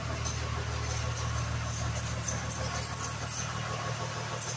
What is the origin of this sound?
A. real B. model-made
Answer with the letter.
A